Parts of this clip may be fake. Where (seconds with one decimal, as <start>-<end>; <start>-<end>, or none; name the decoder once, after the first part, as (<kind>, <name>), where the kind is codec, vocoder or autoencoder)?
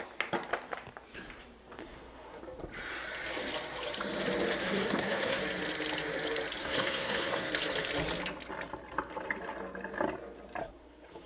1.8-2.4 (codec, SNAC); 4.6-5.4; 6.6-7.5; 10.6-11.3